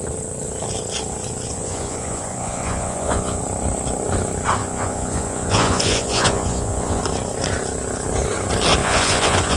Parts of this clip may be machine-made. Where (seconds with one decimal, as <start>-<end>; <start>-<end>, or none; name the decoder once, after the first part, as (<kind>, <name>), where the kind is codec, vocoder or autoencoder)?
1.5-3.4 (vocoder, Vocos); 4.6-7.0; 8.8-9.6